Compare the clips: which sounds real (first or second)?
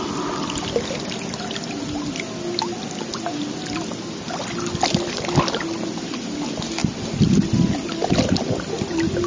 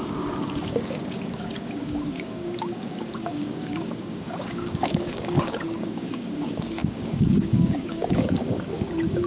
first